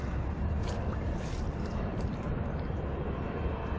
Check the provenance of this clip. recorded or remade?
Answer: remade